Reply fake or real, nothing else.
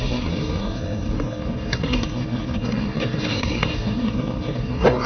fake